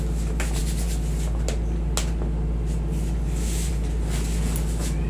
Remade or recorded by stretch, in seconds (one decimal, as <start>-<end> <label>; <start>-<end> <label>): 0.0-5.1 recorded